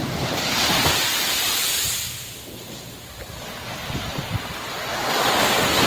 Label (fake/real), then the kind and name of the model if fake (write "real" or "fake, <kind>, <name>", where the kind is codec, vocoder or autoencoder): real